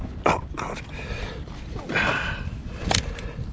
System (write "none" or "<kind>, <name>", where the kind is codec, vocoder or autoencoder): none